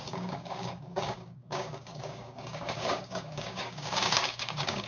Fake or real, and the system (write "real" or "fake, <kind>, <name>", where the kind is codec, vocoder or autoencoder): fake, codec, DAC